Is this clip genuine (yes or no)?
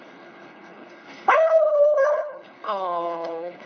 no